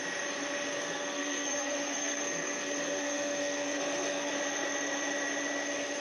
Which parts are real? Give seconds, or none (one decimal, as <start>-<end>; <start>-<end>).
0.0-0.7; 4.3-6.0